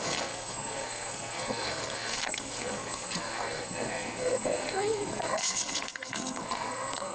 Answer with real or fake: fake